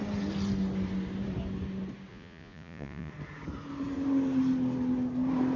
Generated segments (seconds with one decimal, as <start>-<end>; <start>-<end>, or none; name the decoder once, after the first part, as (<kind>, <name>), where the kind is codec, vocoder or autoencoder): 2.1-3.1 (vocoder, Vocos)